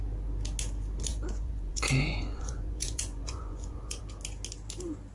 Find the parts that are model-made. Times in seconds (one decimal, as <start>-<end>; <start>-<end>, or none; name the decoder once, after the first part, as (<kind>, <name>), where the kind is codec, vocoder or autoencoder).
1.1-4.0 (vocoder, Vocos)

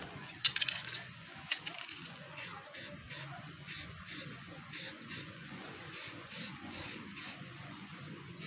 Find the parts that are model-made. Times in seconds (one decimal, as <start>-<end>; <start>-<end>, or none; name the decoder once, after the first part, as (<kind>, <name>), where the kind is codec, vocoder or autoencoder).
0.0-2.5 (vocoder, Vocos); 3.1-8.5

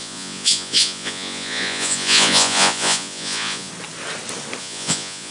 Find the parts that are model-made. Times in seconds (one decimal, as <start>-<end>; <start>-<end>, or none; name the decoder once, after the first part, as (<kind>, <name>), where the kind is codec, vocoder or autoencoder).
0.0-3.7 (vocoder, Vocos); 4.6-5.3

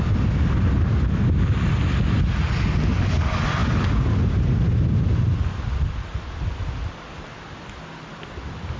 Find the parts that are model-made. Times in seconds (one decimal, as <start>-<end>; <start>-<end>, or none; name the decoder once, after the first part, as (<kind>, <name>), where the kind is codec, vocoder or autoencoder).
none

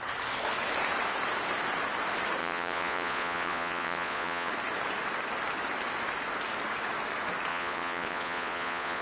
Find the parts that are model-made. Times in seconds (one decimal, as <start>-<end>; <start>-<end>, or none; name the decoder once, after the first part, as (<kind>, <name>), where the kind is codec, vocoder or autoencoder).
2.4-4.5 (vocoder, Vocos); 7.5-9.0

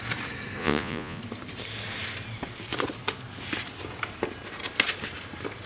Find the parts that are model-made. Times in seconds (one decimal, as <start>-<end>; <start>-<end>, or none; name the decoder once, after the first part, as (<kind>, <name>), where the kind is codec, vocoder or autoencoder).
0.6-1.2 (vocoder, Vocos)

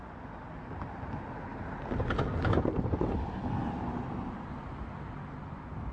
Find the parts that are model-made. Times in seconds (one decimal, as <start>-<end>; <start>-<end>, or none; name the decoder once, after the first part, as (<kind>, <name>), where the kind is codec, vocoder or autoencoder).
none